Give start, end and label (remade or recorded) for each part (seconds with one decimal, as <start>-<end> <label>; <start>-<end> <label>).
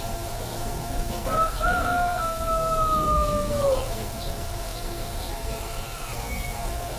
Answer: 0.0-7.0 remade